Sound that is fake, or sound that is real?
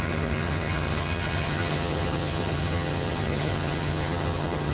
fake